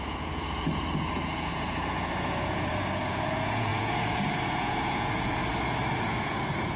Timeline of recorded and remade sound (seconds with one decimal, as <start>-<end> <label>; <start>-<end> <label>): 0.0-5.4 remade; 5.4-6.0 recorded; 6.0-6.8 remade